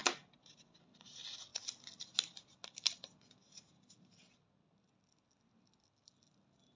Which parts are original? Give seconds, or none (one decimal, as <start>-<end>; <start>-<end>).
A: 0.0-6.8